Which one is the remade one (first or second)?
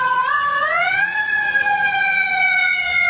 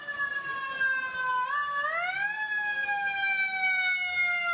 first